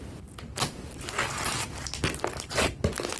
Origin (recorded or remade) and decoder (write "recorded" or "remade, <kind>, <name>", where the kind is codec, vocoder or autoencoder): recorded